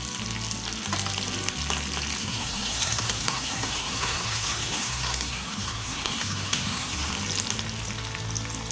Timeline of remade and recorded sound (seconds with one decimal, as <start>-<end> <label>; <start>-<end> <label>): 0.0-2.2 recorded; 2.2-7.1 remade; 7.1-8.7 recorded